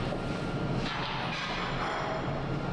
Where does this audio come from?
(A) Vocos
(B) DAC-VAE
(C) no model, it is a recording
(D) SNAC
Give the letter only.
C